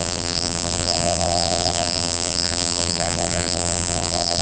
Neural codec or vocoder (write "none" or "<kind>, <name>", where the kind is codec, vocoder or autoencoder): vocoder, BigVGAN v2